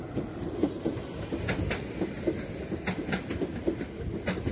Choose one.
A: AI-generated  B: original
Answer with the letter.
B